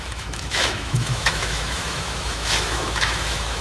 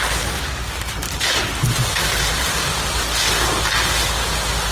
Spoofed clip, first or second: first